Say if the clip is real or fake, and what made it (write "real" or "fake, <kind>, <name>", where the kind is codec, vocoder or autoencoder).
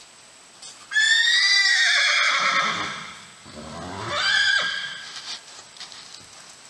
real